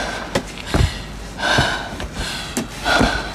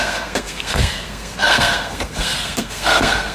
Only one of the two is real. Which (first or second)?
first